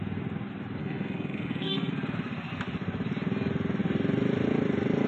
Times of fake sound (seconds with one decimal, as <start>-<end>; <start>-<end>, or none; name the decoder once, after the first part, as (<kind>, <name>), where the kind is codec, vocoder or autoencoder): 0.8-1.9 (codec, SNAC)